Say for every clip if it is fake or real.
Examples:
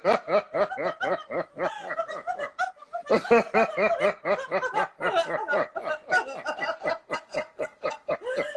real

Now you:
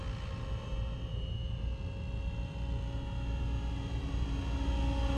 real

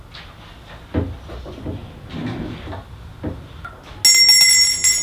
real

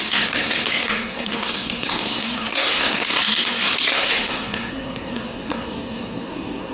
fake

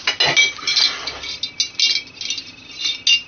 real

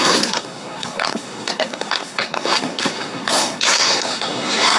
fake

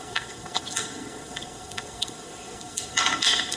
fake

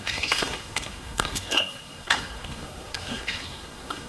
fake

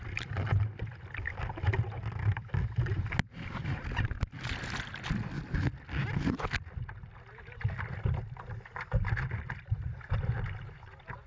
real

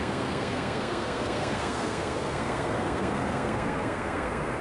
fake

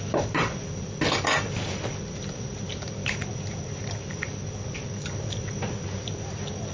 real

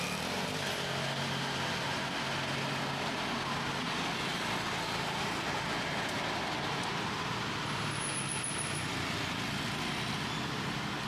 real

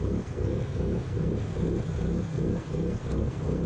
fake